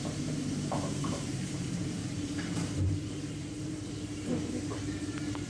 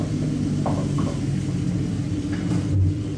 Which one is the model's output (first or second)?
first